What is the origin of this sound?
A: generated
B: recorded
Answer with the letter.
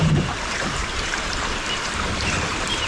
A